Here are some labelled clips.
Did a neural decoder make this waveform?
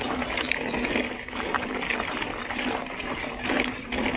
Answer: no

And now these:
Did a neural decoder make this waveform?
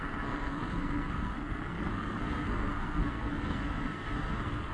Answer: yes